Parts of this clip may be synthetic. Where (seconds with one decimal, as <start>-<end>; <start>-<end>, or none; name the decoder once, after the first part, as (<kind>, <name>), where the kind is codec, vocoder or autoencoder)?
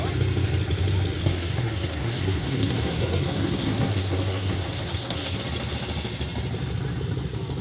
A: 1.2-5.4 (codec, SNAC)